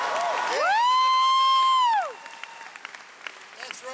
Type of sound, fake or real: real